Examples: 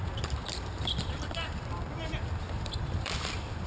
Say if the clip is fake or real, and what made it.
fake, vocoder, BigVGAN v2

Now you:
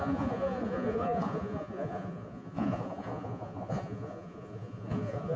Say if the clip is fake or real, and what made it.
fake, vocoder, Vocos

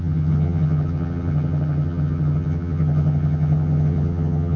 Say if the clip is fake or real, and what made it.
fake, vocoder, HiFi-GAN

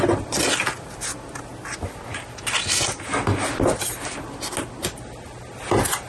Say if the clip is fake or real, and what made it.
real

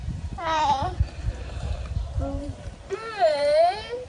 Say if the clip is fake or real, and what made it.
fake, vocoder, BigVGAN v2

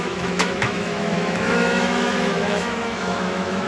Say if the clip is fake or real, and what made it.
fake, autoencoder, DAC-VAE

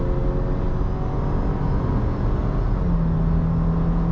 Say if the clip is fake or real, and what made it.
real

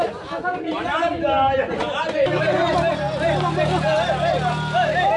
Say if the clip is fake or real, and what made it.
real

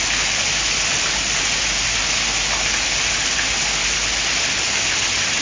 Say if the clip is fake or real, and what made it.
real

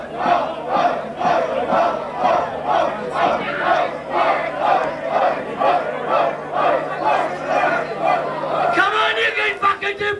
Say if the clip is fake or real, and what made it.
real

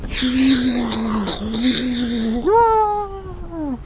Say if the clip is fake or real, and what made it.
real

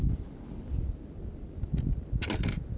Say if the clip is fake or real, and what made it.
real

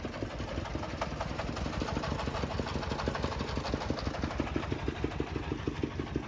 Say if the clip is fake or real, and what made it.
real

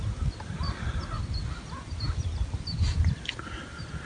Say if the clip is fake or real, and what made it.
real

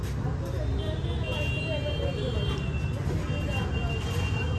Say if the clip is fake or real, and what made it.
real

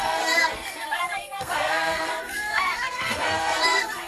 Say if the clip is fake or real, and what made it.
fake, codec, SNAC